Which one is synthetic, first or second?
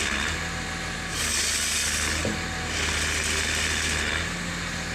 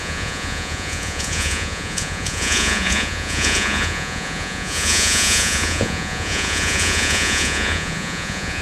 second